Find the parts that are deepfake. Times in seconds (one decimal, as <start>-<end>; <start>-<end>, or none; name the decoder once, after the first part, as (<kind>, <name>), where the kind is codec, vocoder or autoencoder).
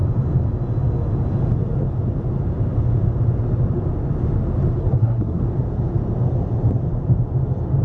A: 4.8-5.4 (codec, SNAC)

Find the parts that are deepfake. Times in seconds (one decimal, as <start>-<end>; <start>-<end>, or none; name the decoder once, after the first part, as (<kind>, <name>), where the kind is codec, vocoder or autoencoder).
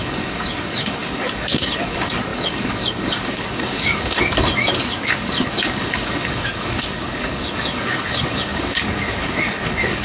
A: 0.0-10.0 (codec, DAC)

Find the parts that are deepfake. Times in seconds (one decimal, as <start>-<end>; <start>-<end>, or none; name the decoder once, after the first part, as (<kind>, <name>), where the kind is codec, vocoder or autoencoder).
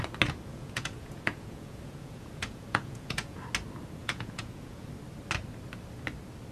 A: 0.5-3.4 (vocoder, Vocos); 4.0-4.9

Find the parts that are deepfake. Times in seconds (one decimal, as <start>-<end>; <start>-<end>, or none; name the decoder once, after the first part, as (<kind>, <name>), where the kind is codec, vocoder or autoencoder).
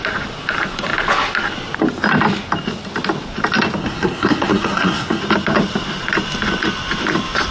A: 3.8-5.2 (codec, SNAC)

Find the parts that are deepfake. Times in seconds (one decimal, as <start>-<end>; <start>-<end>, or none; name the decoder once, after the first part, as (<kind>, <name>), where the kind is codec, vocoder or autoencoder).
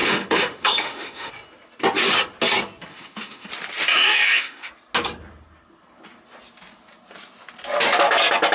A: 0.0-1.3 (autoencoder, DAC-VAE); 2.9-3.5; 3.9-4.7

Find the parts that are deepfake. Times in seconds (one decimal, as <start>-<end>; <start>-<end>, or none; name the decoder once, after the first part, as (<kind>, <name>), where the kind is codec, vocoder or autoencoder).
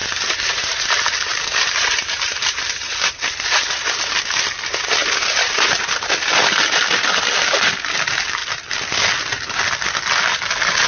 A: 0.0-4.2 (vocoder, BigVGAN v2); 5.0-6.8; 8.4-8.9